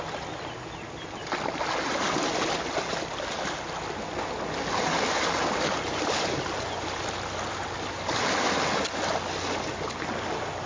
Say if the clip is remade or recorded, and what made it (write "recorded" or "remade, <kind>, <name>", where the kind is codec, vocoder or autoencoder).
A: recorded